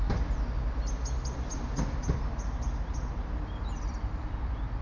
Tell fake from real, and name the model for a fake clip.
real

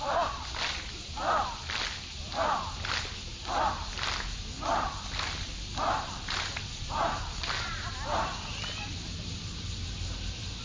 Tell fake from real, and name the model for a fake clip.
real